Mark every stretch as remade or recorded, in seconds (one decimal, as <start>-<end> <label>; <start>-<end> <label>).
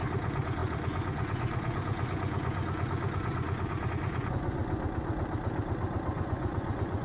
0.0-4.6 remade; 4.6-6.1 recorded; 6.1-7.0 remade